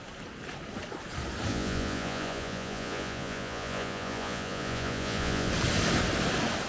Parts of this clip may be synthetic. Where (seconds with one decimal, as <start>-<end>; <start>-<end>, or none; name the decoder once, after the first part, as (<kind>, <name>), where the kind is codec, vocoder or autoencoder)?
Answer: 1.5-5.5 (vocoder, Vocos)